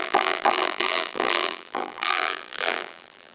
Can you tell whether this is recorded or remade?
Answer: remade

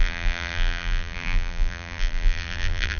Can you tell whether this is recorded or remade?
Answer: remade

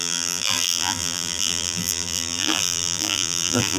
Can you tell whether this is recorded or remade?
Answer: remade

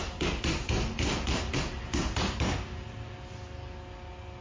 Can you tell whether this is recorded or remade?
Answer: recorded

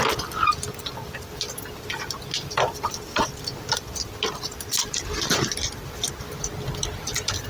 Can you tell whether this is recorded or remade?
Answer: recorded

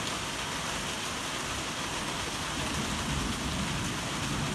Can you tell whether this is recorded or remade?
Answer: recorded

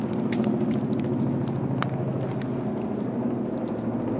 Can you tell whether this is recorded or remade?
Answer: recorded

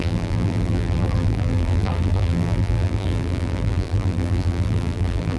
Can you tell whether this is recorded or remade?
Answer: remade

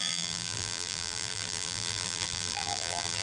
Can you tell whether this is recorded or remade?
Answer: remade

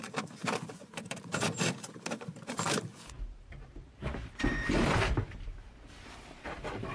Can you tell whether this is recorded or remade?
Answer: remade